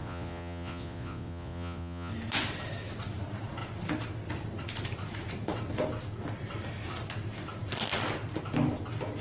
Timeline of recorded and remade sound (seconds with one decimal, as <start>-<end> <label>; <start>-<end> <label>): 0.0-2.1 remade; 2.1-9.2 recorded

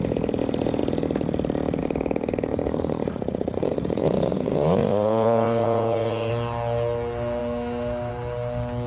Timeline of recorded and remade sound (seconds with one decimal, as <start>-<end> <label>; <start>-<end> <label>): 0.0-2.5 recorded; 2.5-6.3 remade; 6.3-8.9 recorded

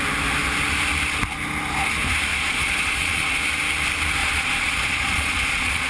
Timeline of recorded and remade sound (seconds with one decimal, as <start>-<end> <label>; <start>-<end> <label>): 0.0-2.3 recorded; 2.3-3.4 remade; 3.4-4.2 recorded; 4.2-5.9 remade

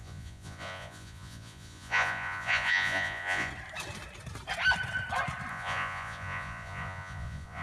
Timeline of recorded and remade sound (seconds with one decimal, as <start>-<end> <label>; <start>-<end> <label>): 0.0-3.5 remade; 3.5-5.5 recorded; 5.5-7.6 remade

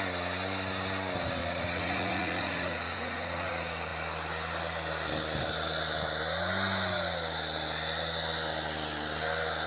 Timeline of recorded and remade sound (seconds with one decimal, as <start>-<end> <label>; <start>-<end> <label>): 0.0-1.4 recorded; 1.4-3.5 remade; 3.5-9.7 recorded

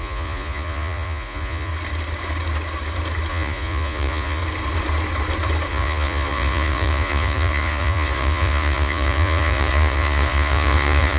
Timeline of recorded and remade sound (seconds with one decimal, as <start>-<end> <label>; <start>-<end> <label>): 0.0-1.7 remade; 1.7-3.3 recorded; 3.3-4.4 remade; 4.4-5.7 recorded; 5.7-11.2 remade